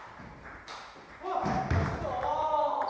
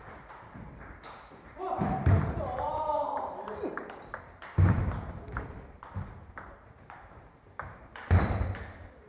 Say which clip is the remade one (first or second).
second